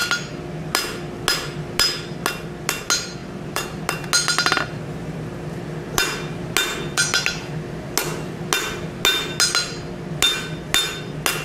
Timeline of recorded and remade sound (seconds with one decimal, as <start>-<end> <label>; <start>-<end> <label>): 0.0-3.2 recorded; 3.2-3.8 remade; 3.8-11.4 recorded